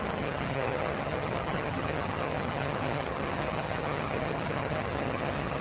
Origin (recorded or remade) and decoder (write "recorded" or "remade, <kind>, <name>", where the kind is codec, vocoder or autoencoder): remade, vocoder, HiFi-GAN